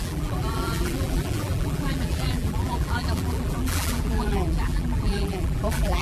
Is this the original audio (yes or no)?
no